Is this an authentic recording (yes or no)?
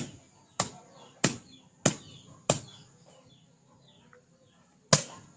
yes